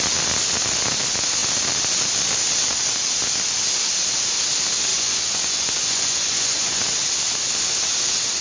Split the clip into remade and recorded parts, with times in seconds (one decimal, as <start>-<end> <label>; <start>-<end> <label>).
0.0-4.9 recorded; 4.9-6.8 remade; 6.8-8.4 recorded